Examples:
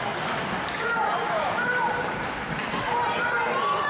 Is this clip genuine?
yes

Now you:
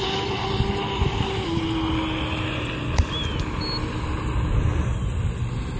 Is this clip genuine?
yes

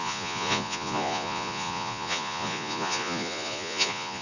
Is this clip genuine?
no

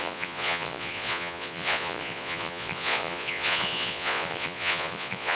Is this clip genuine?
no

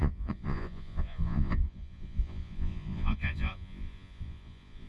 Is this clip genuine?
no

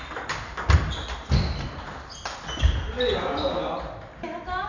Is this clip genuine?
yes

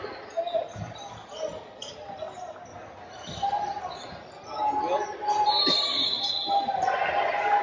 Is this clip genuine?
yes